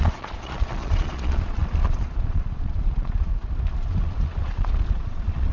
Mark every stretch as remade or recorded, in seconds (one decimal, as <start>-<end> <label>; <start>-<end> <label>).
0.0-3.3 remade; 3.3-3.9 recorded; 3.9-5.5 remade